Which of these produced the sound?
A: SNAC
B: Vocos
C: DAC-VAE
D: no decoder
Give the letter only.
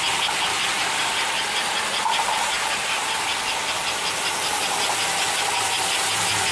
D